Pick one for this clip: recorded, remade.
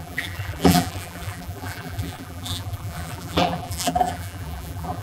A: remade